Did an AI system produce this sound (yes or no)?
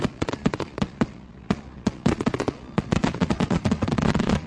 yes